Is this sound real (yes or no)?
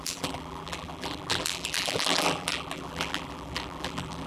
no